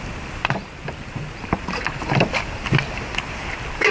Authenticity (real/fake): real